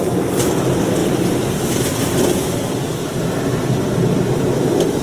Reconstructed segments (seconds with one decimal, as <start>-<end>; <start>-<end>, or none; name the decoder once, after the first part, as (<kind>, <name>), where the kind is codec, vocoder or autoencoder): none